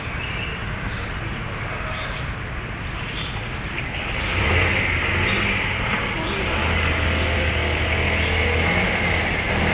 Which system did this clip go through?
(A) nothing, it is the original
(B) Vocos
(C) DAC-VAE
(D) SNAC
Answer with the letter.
A